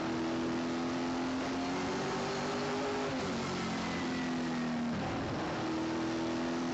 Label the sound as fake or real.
real